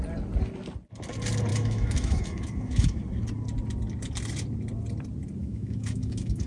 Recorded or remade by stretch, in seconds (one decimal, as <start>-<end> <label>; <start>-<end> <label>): 0.0-1.5 recorded; 1.5-3.0 remade; 3.0-5.4 recorded; 5.4-6.5 remade